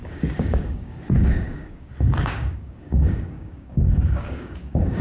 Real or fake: fake